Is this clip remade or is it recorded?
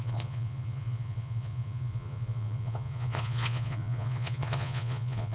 remade